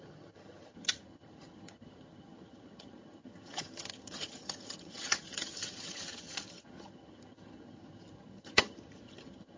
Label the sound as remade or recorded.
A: remade